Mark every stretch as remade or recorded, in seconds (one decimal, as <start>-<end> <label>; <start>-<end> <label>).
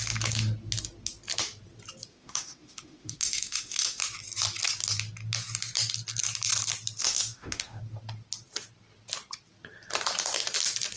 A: 0.0-2.1 recorded; 2.1-4.0 remade; 4.0-7.0 recorded; 7.0-7.8 remade; 7.8-11.0 recorded